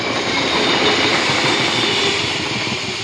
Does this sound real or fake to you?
real